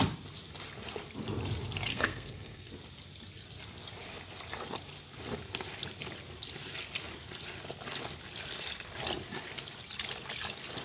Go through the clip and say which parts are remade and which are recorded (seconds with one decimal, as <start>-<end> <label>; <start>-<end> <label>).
0.0-1.9 recorded; 1.9-2.7 remade; 2.7-10.8 recorded